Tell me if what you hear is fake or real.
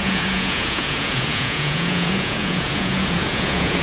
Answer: fake